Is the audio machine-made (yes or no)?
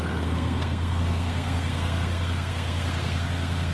yes